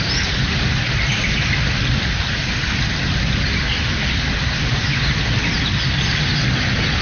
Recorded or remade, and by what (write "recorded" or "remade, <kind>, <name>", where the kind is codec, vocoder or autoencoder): recorded